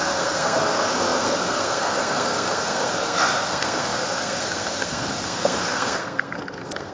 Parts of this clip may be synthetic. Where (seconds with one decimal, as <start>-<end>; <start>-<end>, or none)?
0.0-6.9